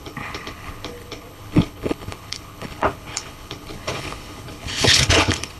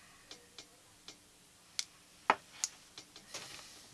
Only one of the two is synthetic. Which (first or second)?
first